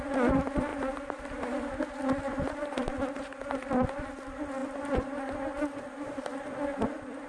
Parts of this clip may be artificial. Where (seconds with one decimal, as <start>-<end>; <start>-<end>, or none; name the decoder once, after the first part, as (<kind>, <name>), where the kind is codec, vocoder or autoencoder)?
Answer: none